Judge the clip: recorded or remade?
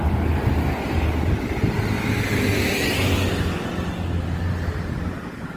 recorded